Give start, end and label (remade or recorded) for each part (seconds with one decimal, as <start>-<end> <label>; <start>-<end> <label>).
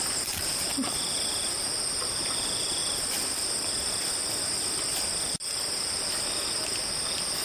0.0-2.8 remade; 2.8-7.4 recorded